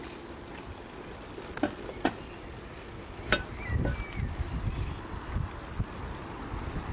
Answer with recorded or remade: recorded